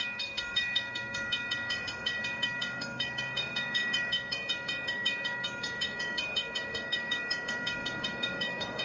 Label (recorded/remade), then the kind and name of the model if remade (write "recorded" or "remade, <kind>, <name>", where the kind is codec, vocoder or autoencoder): remade, codec, DAC